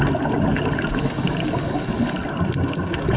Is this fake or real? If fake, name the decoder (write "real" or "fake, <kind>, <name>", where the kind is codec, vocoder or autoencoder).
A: real